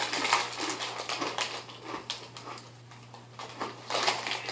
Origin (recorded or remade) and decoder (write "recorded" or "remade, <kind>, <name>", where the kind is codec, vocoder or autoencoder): recorded